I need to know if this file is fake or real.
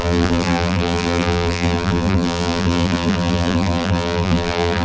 fake